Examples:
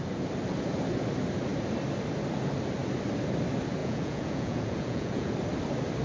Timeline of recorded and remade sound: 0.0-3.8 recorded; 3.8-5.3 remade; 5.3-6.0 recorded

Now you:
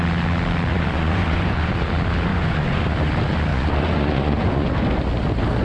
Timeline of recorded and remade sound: 0.0-0.7 recorded; 0.7-1.7 remade; 1.7-2.3 recorded; 2.3-2.8 remade; 2.8-3.5 recorded; 3.5-4.7 remade; 4.7-5.6 recorded

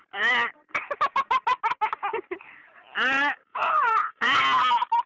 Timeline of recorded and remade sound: 0.0-3.5 recorded; 3.5-4.4 remade; 4.4-5.1 recorded

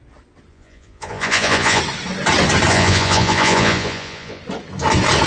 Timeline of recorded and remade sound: 0.0-0.5 recorded; 0.5-1.8 remade; 1.8-2.7 recorded; 2.7-4.4 remade; 4.4-5.3 recorded

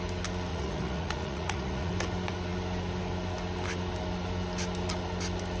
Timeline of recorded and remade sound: 0.0-0.5 recorded; 0.5-1.9 remade; 1.9-5.6 recorded